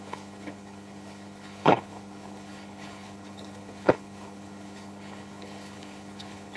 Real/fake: fake